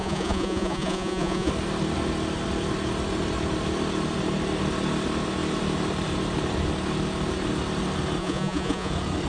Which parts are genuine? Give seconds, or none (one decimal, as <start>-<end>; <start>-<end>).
1.5-8.2; 8.9-9.3